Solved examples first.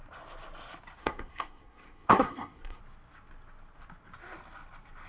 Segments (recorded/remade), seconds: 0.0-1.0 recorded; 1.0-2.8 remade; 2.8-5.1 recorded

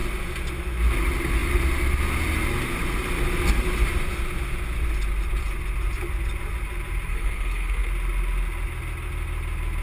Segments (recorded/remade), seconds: 0.0-7.1 recorded; 7.1-7.9 remade; 7.9-9.8 recorded

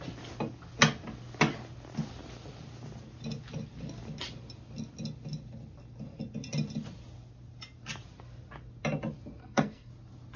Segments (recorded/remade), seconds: 0.0-9.4 recorded; 9.4-9.9 remade; 9.9-10.4 recorded

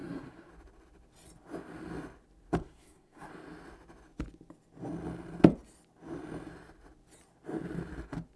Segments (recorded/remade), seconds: 0.0-0.5 remade; 0.5-2.6 recorded; 2.6-3.3 remade; 3.3-8.4 recorded

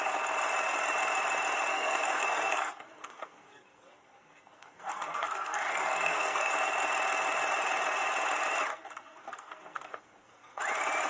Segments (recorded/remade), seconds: 0.0-1.7 recorded; 1.7-6.5 remade; 6.5-8.7 recorded; 8.7-10.6 remade; 10.6-11.1 recorded

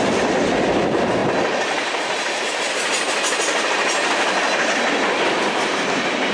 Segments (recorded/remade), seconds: 0.0-6.3 recorded

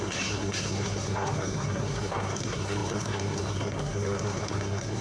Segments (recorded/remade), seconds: 0.0-5.0 remade